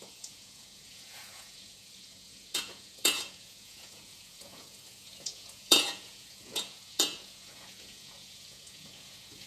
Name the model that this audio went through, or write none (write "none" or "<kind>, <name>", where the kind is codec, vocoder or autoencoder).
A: vocoder, Vocos